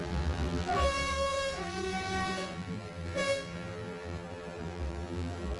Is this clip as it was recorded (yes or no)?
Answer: no